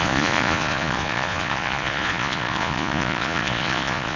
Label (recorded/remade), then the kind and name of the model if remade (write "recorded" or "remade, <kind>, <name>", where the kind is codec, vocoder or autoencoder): remade, vocoder, Vocos